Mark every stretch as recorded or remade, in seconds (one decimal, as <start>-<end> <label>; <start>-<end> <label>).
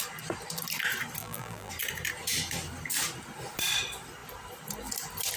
0.0-1.2 recorded; 1.2-1.7 remade; 1.7-5.4 recorded